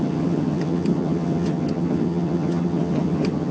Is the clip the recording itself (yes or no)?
no